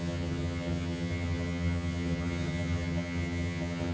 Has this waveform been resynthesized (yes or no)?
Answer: yes